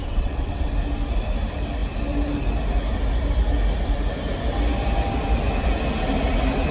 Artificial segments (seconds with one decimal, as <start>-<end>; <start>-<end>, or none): 0.0-0.7